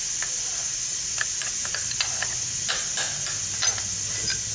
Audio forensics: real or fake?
real